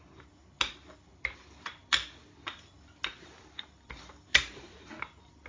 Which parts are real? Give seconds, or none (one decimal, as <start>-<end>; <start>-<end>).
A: 0.0-1.1; 2.7-3.1; 4.7-5.5